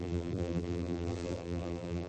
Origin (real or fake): fake